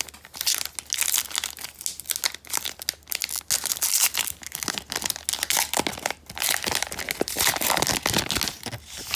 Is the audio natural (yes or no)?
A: yes